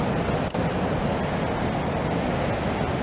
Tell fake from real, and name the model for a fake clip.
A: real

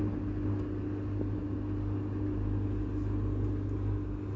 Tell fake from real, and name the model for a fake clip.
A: real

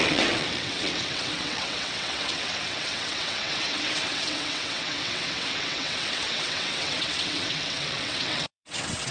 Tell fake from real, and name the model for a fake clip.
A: fake, vocoder, WaveNeXt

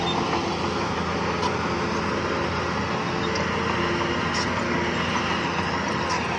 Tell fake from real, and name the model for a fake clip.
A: real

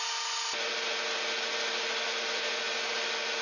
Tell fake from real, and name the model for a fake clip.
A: real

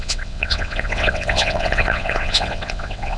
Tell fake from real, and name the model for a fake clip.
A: fake, vocoder, WaveNeXt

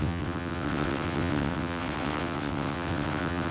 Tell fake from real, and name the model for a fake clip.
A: fake, vocoder, WaveNeXt